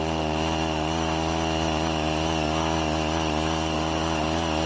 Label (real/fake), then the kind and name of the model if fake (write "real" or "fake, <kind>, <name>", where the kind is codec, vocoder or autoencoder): real